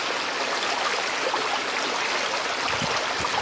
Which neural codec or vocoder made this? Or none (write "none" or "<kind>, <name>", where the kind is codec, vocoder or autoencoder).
none